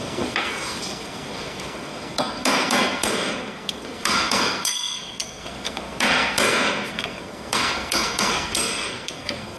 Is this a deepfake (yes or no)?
yes